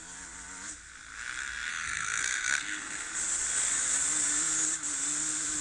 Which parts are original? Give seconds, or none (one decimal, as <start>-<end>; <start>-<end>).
0.0-1.7; 3.1-5.6